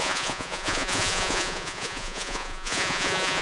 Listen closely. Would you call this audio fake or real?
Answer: fake